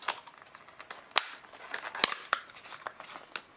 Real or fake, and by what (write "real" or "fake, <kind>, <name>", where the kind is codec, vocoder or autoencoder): real